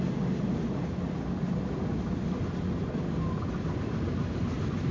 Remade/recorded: recorded